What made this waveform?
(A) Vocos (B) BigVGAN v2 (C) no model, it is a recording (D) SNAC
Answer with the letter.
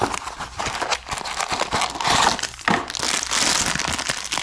C